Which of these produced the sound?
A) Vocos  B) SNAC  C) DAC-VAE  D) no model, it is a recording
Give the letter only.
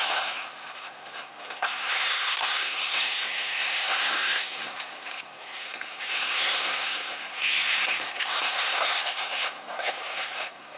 B